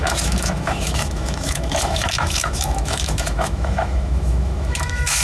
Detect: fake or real fake